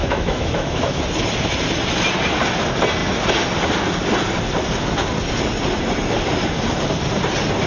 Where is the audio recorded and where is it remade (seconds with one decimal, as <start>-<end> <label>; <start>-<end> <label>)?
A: 0.0-1.0 remade; 1.0-7.7 recorded